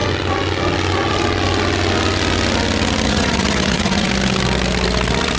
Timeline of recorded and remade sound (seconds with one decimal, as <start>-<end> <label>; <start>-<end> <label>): 0.0-3.1 recorded; 3.1-4.1 remade; 4.1-5.4 recorded